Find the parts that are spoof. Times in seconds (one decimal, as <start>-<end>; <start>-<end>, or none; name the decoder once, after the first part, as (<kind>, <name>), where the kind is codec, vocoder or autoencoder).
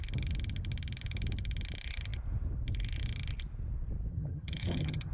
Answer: 4.1-5.1 (vocoder, HiFi-GAN)